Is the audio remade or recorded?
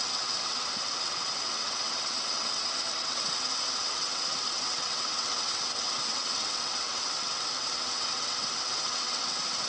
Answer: remade